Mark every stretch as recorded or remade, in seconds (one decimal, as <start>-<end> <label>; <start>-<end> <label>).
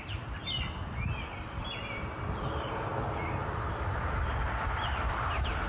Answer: 0.0-5.7 recorded